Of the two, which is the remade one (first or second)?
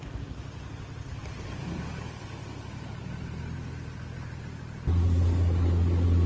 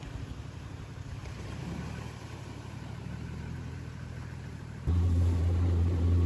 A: second